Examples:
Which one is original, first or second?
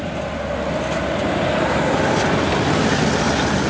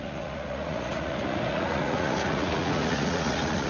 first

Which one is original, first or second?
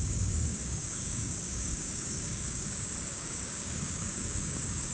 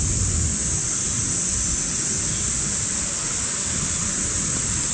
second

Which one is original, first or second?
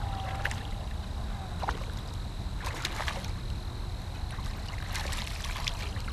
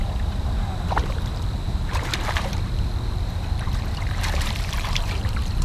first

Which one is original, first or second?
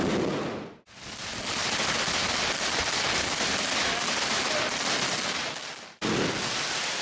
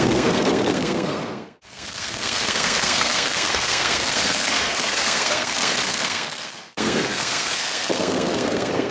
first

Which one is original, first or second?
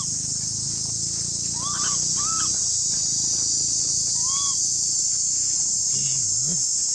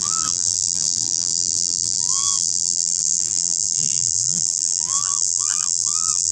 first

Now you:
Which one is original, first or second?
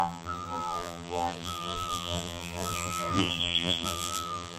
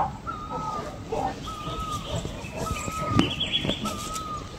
second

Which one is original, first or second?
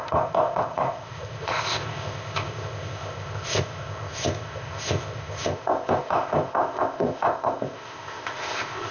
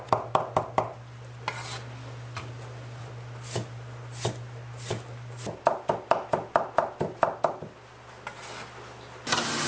second